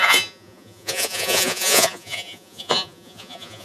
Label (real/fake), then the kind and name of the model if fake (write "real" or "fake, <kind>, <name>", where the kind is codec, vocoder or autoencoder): fake, vocoder, Vocos